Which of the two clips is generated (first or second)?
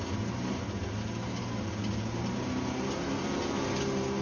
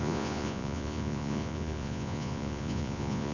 second